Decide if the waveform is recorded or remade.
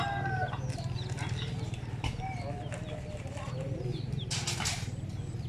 recorded